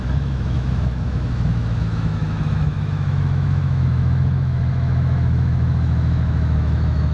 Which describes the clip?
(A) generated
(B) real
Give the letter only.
A